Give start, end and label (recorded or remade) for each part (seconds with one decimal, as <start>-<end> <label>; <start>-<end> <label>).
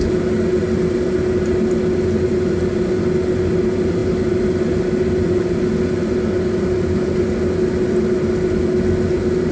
0.0-9.5 recorded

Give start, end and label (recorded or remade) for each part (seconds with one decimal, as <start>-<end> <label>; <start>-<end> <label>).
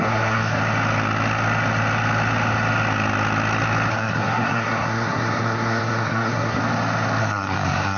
0.0-0.6 remade; 0.6-3.9 recorded; 3.9-6.6 remade; 6.6-7.2 recorded; 7.2-8.0 remade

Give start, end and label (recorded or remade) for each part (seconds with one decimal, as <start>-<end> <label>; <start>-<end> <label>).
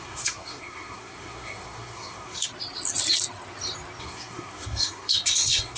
0.0-2.5 remade; 2.5-4.0 recorded; 4.0-5.8 remade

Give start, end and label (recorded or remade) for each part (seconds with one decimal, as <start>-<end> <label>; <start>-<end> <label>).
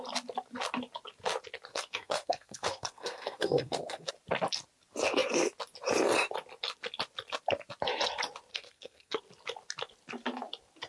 0.0-1.7 recorded; 1.7-4.1 remade; 4.1-8.5 recorded; 8.5-9.2 remade; 9.2-10.9 recorded